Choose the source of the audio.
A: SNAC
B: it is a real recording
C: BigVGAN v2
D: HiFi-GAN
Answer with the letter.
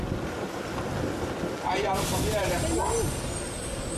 B